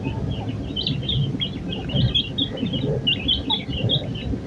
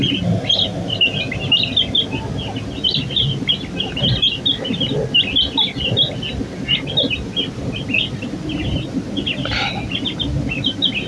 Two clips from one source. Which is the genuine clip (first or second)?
second